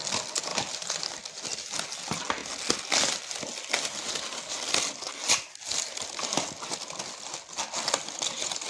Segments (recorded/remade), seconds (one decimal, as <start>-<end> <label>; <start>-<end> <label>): 0.0-0.5 recorded; 0.5-1.0 remade; 1.0-8.7 recorded